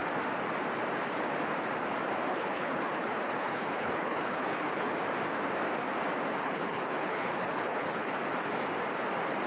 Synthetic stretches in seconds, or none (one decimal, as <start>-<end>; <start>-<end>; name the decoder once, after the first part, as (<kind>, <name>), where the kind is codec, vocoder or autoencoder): 2.3-4.9 (codec, HILCodec); 6.4-8.1